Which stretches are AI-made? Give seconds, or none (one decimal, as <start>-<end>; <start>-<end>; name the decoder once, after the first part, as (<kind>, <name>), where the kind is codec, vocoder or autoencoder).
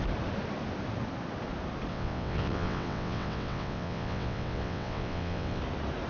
1.9-5.6 (vocoder, WaveNeXt)